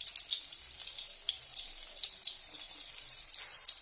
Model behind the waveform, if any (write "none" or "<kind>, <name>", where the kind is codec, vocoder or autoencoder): none